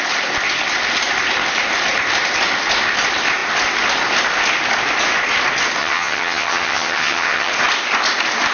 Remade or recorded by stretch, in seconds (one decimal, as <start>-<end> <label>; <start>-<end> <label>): 0.0-5.8 recorded; 5.8-7.5 remade; 7.5-8.5 recorded